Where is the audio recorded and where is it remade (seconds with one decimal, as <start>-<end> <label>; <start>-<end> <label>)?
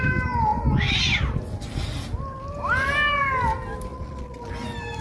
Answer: 0.0-3.9 recorded; 3.9-4.5 remade; 4.5-5.0 recorded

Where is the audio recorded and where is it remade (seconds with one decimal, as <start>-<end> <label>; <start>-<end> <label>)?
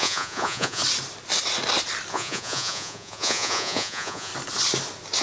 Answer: 0.0-0.8 remade; 0.8-2.1 recorded; 2.1-4.3 remade; 4.3-5.2 recorded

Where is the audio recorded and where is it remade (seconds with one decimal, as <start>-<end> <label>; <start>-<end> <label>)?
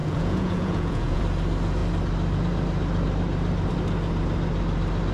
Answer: 0.0-1.2 remade; 1.2-5.1 recorded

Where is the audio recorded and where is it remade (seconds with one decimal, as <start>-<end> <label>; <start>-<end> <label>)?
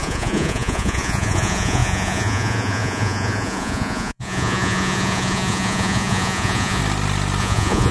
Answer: 0.0-6.8 remade; 6.8-7.4 recorded; 7.4-7.9 remade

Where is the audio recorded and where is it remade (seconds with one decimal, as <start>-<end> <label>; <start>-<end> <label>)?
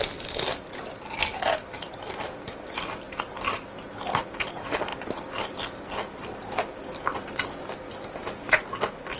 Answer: 0.0-9.2 recorded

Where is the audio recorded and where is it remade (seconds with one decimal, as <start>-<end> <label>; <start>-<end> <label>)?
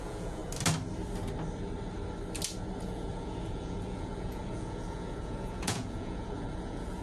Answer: 0.0-0.4 remade; 0.4-2.8 recorded; 2.8-7.0 remade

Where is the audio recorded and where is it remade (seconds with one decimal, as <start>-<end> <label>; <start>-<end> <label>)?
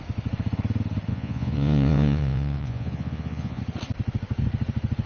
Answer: 0.0-1.1 recorded; 1.1-3.6 remade; 3.6-5.1 recorded